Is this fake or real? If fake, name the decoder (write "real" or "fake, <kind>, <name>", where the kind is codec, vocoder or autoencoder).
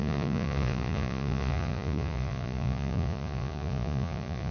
fake, vocoder, Vocos